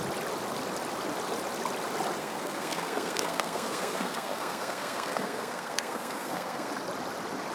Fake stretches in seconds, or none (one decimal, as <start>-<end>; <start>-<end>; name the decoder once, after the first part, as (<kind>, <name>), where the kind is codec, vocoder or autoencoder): 2.2-6.7 (codec, SNAC)